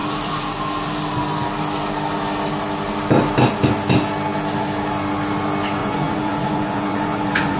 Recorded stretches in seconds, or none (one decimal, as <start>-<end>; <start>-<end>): 0.0-5.8